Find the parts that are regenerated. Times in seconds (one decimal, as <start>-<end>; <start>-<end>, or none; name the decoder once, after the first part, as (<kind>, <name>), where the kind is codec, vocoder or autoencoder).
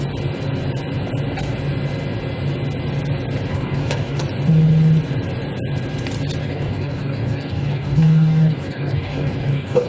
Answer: 3.5-4.2 (codec, DAC); 6.4-9.9